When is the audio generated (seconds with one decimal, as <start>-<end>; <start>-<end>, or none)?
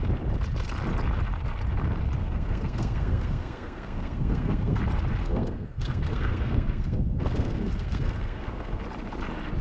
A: 2.2-4.8; 5.2-8.8